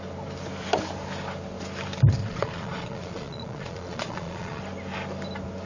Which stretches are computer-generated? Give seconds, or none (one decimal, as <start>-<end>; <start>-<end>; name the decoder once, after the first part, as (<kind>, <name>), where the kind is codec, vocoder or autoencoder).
2.2-4.6 (vocoder, Vocos)